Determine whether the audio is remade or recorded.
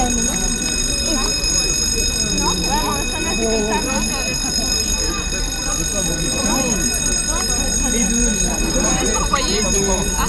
recorded